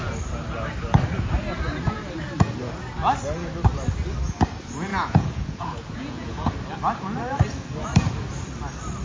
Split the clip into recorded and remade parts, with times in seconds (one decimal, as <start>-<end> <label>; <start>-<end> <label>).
0.0-4.9 recorded; 4.9-6.5 remade; 6.5-9.0 recorded